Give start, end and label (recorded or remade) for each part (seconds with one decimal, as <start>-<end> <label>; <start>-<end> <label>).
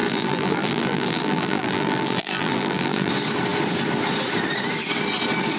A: 0.0-3.1 remade; 3.1-5.6 recorded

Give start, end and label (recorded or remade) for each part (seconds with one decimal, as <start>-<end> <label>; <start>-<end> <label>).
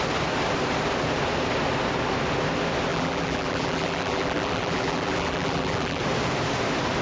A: 0.0-2.9 recorded; 2.9-6.0 remade; 6.0-7.0 recorded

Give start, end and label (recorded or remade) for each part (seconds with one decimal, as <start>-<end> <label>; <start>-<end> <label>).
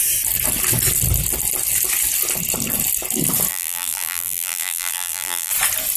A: 0.0-3.5 recorded; 3.5-5.5 remade; 5.5-6.0 recorded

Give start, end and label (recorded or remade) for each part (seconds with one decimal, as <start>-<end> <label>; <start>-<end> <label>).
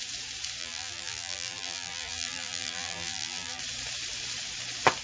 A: 0.0-0.6 recorded; 0.6-3.6 remade; 3.6-5.0 recorded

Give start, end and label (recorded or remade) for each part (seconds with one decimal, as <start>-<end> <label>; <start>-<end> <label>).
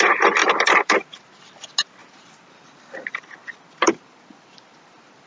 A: 0.0-0.4 recorded; 0.4-1.2 remade; 1.2-2.0 recorded; 2.0-5.3 remade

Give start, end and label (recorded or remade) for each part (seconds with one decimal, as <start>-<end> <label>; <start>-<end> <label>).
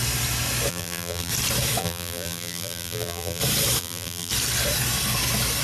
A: 0.0-0.7 recorded; 0.7-1.3 remade; 1.3-1.8 recorded; 1.8-3.4 remade; 3.4-3.8 recorded; 3.8-4.3 remade; 4.3-5.6 recorded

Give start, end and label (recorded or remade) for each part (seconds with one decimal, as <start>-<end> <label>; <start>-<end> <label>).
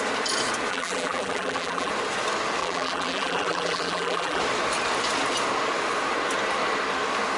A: 0.0-0.7 recorded; 0.7-1.9 remade; 1.9-2.6 recorded; 2.6-4.4 remade; 4.4-7.4 recorded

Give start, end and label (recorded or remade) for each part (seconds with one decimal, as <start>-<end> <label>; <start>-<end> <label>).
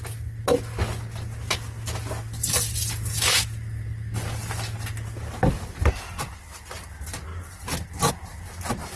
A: 0.0-7.3 recorded; 7.3-8.1 remade; 8.1-9.0 recorded